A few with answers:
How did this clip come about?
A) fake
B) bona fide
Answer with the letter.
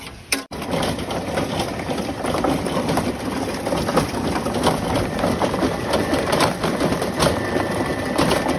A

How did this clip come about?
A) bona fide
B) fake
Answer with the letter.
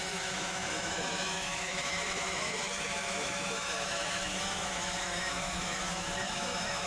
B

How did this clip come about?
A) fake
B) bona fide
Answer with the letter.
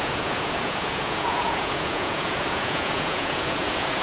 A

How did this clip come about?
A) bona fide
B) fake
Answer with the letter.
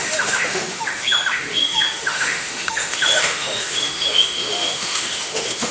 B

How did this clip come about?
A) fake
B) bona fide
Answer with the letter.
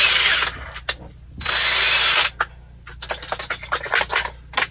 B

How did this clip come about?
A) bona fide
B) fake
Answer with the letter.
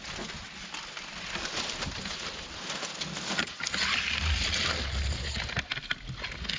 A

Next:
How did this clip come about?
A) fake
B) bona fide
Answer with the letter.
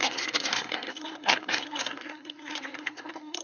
A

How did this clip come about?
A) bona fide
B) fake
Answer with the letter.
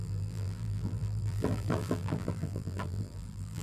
B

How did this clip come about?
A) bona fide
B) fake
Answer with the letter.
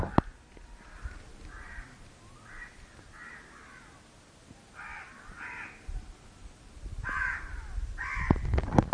A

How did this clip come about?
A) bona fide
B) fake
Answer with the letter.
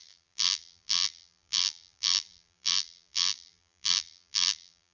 B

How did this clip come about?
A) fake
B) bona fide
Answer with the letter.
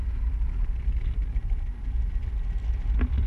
B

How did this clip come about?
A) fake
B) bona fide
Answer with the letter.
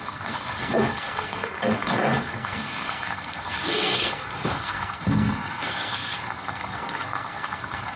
A